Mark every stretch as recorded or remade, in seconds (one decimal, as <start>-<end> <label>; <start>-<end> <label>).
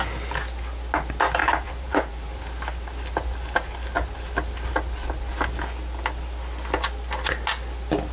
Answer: 0.0-1.4 recorded; 1.4-2.4 remade; 2.4-8.1 recorded